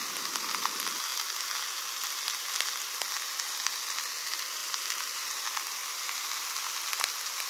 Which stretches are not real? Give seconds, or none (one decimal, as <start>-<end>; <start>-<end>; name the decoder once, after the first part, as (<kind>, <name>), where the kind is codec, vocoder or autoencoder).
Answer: 4.6-6.3 (vocoder, BigVGAN v2)